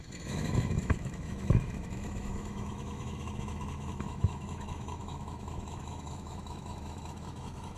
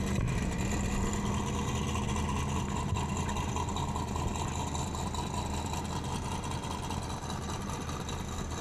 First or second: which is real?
second